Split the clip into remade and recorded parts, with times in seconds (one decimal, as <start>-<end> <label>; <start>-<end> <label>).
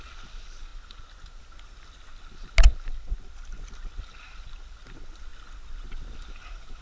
0.0-0.7 recorded; 0.7-1.4 remade; 1.4-2.7 recorded; 2.7-4.8 remade; 4.8-6.8 recorded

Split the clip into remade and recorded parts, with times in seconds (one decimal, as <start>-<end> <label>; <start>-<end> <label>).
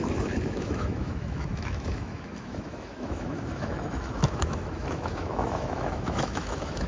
0.0-6.9 remade